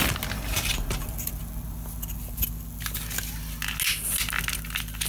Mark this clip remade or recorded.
recorded